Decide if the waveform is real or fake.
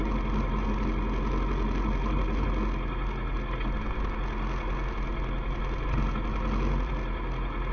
real